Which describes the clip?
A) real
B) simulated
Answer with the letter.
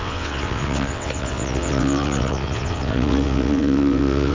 B